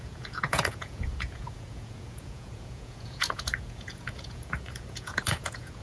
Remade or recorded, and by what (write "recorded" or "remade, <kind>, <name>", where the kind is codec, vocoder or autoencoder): remade, vocoder, Vocos